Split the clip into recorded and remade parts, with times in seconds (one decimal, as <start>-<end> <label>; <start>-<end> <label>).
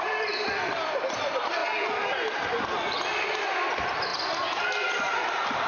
0.0-1.6 remade; 1.6-3.1 recorded; 3.1-4.1 remade; 4.1-5.7 recorded